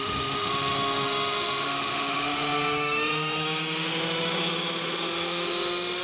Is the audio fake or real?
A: fake